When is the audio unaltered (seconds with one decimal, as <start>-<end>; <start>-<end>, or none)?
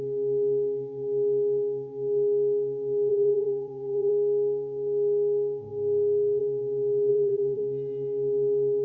0.0-3.1; 4.1-7.1; 7.6-8.8